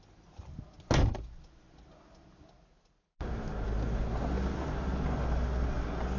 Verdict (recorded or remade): recorded